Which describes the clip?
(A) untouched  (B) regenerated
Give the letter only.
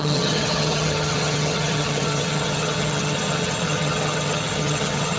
B